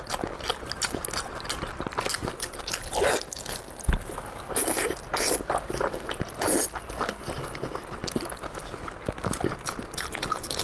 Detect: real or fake real